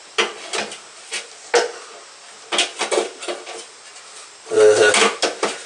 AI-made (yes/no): no